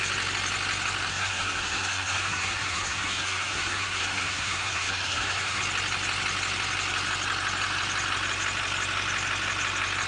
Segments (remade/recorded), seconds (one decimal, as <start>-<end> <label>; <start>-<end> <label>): 0.0-1.1 recorded; 1.1-5.6 remade; 5.6-10.1 recorded